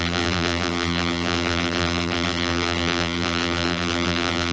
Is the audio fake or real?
fake